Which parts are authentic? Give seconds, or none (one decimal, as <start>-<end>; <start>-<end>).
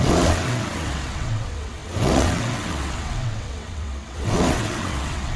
none